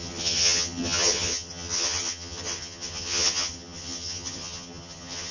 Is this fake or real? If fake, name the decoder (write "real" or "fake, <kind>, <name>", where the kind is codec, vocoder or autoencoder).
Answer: fake, vocoder, HiFi-GAN